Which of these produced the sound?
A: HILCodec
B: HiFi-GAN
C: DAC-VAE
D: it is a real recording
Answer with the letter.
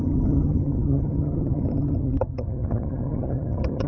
B